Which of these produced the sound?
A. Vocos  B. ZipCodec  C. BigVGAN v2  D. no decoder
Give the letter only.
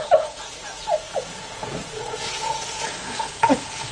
A